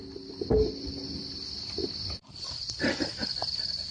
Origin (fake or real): real